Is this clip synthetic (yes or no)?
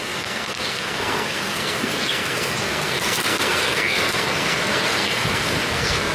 yes